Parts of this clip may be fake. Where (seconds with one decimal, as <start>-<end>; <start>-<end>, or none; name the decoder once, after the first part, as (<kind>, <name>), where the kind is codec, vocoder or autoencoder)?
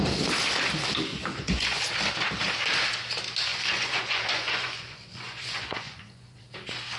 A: 1.1-1.8 (vocoder, Vocos); 3.5-6.4